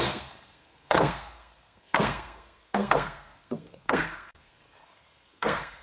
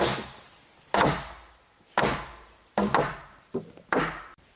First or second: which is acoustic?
second